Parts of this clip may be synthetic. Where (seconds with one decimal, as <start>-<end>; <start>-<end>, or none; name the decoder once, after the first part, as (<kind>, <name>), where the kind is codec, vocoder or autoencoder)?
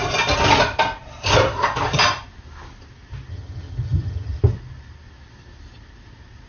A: 3.3-4.4 (vocoder, HiFi-GAN)